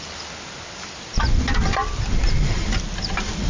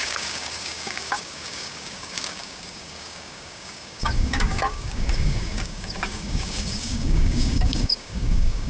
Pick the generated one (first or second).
second